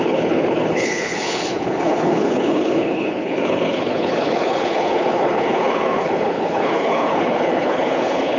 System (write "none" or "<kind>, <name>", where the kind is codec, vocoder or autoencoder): codec, HILCodec